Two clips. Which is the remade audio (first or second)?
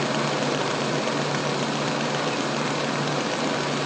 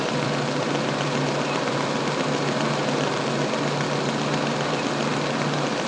first